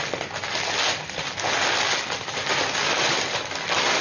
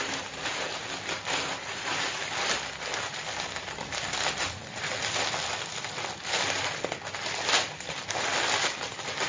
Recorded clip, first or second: first